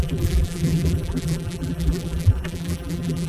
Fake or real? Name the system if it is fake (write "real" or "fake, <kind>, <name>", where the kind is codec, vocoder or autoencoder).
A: fake, vocoder, BigVGAN v2